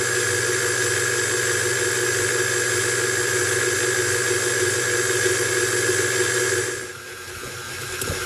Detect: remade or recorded recorded